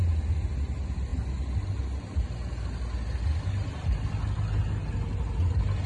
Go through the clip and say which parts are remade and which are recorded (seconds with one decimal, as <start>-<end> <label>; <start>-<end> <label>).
0.0-5.9 recorded